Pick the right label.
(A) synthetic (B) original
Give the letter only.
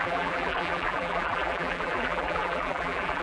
A